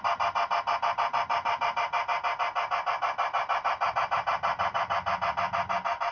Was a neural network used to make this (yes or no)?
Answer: no